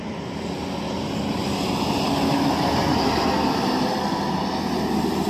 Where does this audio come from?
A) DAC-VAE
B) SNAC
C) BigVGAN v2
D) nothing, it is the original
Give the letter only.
D